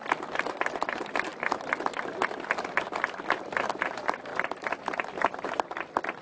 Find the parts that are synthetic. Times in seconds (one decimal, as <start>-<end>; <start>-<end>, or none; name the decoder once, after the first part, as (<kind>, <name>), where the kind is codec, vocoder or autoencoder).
none